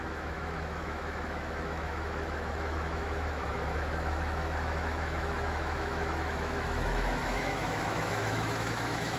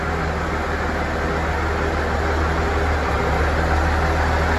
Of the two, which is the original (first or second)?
second